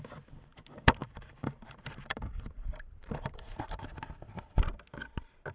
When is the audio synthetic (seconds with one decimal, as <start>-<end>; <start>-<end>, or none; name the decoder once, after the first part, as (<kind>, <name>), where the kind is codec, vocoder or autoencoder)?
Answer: 1.0-4.0 (vocoder, BigVGAN v2)

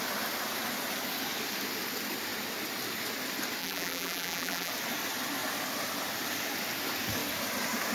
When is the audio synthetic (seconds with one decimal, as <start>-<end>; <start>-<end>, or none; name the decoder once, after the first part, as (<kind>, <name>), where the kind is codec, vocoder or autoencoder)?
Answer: 3.6-4.7 (vocoder, BigVGAN v2)

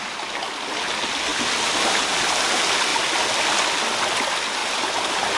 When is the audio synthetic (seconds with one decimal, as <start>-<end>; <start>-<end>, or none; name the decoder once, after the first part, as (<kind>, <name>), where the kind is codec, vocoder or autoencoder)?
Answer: 1.3-2.5 (vocoder, BigVGAN v2); 4.6-5.4

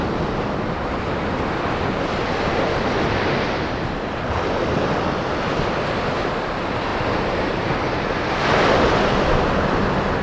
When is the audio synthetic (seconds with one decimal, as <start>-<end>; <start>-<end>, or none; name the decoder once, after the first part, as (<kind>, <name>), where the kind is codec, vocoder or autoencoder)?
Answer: 6.9-8.4 (vocoder, BigVGAN v2)

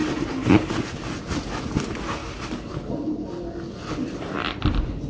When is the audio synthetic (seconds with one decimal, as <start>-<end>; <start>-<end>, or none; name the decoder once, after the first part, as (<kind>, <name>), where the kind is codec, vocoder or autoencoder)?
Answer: 0.0-2.9 (vocoder, BigVGAN v2)

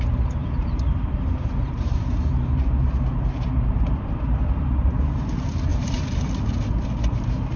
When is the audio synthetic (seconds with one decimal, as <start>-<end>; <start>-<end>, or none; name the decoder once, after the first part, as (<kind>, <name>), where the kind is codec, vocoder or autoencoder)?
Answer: 0.4-4.9 (vocoder, BigVGAN v2); 5.7-6.6

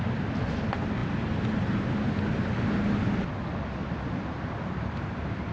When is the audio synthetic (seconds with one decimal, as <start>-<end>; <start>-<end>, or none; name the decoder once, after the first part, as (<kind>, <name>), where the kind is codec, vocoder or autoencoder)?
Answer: none

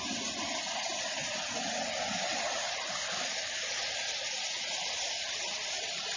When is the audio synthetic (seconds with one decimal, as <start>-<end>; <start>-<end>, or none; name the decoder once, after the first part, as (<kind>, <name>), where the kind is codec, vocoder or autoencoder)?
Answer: 1.2-3.8 (vocoder, BigVGAN v2)